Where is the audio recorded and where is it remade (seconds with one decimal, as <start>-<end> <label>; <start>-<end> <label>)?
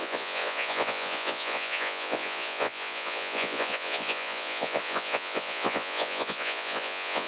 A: 0.0-7.3 remade